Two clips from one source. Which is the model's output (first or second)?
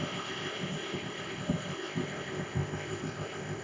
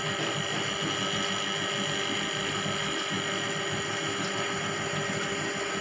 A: first